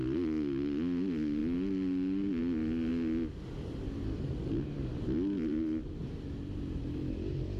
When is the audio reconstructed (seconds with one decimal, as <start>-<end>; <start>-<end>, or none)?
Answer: none